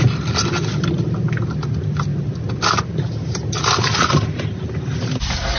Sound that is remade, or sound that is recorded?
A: recorded